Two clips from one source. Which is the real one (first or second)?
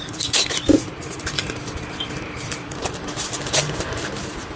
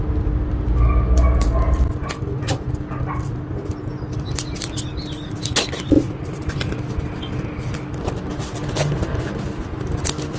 second